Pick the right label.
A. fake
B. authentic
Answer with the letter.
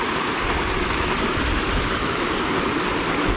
B